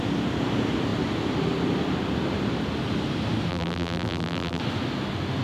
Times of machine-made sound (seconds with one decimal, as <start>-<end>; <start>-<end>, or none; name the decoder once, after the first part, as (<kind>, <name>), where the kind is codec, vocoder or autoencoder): 3.5-4.6 (vocoder, BigVGAN v2)